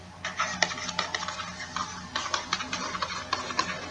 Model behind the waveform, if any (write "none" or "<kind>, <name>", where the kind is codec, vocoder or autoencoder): none